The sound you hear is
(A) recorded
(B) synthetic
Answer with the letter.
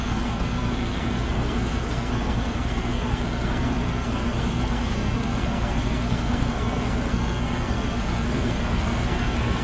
B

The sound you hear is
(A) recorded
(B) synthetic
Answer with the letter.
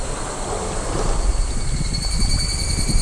A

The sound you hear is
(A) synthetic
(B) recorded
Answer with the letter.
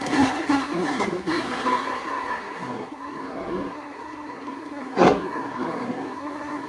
A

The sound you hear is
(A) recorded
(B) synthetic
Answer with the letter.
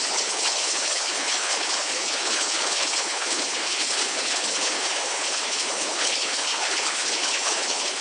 B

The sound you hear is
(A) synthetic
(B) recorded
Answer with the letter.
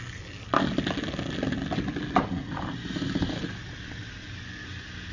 B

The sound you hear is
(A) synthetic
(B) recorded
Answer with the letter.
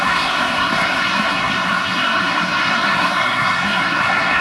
A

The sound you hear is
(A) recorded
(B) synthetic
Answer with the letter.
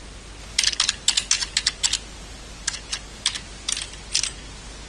A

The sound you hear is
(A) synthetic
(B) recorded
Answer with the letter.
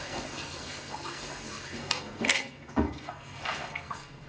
A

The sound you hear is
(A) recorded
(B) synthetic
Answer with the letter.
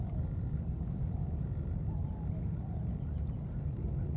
A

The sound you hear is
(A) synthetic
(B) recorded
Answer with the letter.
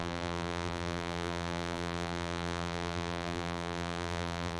A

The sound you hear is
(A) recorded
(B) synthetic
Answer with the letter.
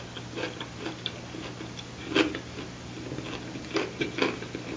A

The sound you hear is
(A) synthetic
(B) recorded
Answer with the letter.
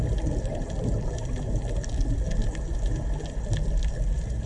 B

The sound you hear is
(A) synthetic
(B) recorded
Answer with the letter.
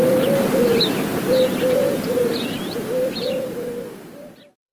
A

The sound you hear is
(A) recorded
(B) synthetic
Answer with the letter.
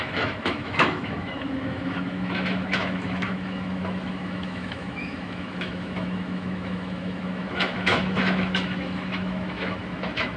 B